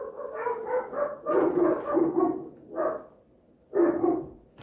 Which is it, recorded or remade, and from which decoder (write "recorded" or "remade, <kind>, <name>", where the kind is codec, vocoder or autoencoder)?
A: recorded